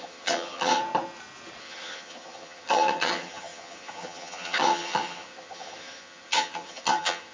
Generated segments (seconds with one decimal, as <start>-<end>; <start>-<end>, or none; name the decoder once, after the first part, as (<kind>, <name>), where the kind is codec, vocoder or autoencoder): 0.0-0.8 (vocoder, HiFi-GAN); 1.6-7.3

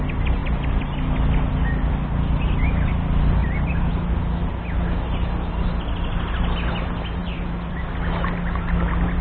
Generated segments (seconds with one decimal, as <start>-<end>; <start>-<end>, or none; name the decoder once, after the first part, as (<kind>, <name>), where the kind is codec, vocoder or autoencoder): 3.4-3.9 (vocoder, BigVGAN v2)

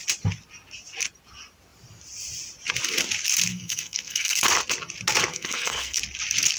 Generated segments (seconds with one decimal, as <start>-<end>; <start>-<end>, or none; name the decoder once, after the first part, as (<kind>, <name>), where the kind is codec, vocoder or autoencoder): 3.5-4.4 (codec, SNAC); 5.3-6.0

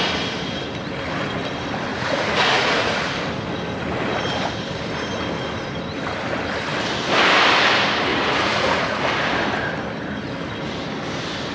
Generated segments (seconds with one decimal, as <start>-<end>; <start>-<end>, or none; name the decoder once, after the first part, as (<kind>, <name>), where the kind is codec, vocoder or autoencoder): 1.9-3.1 (vocoder, Vocos); 8.1-9.0

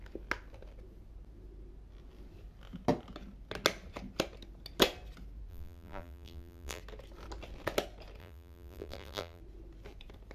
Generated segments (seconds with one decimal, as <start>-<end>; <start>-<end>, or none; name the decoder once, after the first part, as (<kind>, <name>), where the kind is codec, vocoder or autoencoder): 5.5-6.8 (vocoder, BigVGAN v2); 8.2-9.4

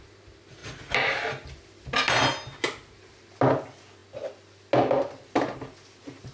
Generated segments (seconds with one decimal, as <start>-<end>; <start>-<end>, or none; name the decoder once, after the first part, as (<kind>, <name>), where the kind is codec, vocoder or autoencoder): none